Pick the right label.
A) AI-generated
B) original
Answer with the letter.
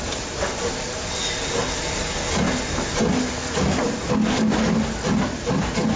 B